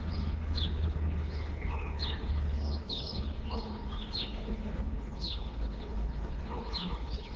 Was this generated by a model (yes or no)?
yes